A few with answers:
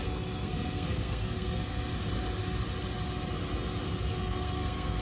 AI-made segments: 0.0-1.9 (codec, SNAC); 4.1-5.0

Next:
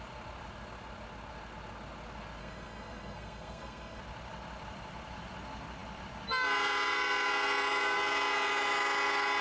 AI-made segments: 2.4-4.0 (codec, SNAC)